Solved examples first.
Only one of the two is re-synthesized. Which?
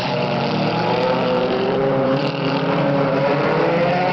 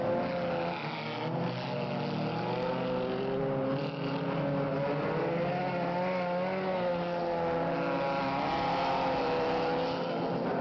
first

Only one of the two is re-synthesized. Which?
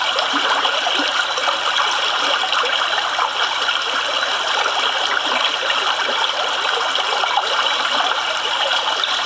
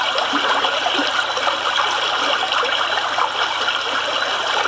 first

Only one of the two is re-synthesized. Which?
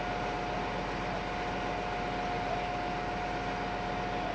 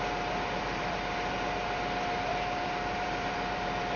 second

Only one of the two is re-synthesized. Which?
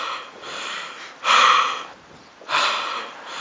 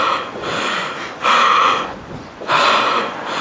second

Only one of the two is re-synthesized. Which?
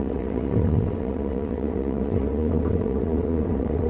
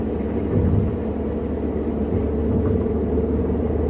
first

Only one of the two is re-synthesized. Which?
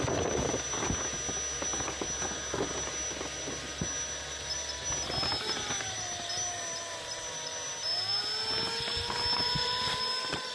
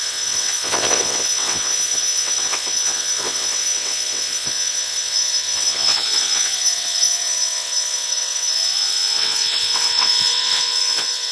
second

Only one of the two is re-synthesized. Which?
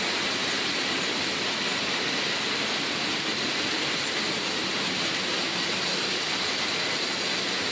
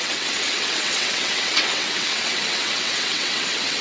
second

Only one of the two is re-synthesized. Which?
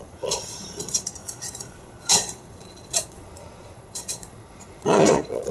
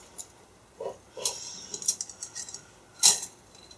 first